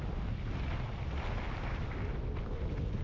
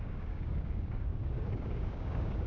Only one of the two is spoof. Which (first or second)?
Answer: second